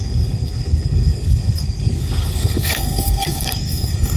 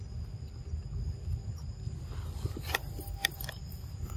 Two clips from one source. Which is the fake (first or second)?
first